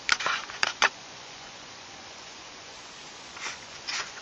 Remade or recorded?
remade